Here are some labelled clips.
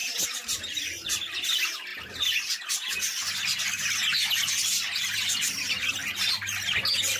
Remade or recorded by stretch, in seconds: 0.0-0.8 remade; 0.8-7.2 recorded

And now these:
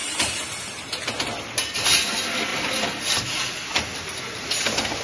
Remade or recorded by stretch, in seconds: 0.0-0.8 remade; 0.8-5.0 recorded

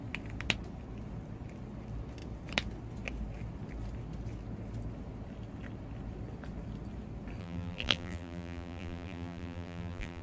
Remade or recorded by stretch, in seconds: 0.0-7.4 recorded; 7.4-10.2 remade